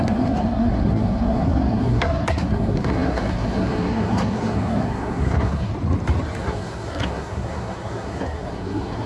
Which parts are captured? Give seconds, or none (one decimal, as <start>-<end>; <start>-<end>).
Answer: 5.7-6.4

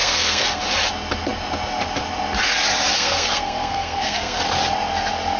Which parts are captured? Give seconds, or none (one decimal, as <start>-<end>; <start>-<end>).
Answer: 0.6-2.9; 4.4-5.4

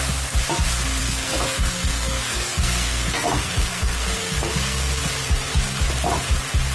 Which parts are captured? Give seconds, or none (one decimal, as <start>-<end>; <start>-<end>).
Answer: 0.0-1.0; 5.0-6.7

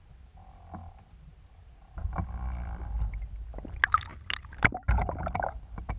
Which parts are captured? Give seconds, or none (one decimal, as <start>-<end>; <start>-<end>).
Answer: 0.0-6.0